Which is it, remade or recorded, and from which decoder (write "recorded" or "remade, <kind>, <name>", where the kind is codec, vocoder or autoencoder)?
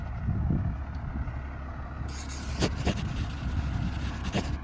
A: recorded